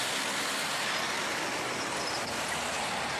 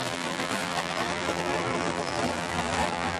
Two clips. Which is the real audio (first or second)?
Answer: first